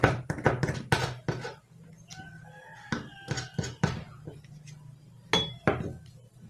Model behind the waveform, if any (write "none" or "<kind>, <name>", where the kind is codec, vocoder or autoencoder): none